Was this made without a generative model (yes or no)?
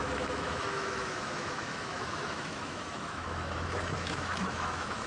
no